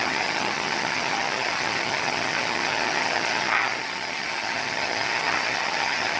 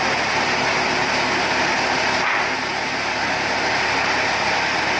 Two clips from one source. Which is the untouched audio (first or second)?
second